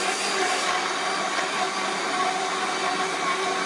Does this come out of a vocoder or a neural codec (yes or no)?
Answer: no